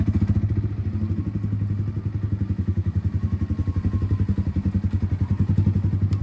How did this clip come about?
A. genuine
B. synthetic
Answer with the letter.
A